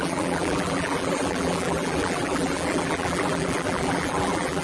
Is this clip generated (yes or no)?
yes